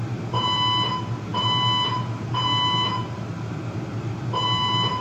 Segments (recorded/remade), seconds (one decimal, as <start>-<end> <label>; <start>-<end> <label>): 0.0-5.0 remade